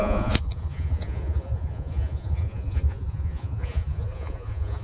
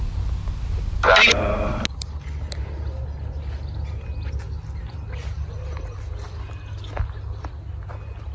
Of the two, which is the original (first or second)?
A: second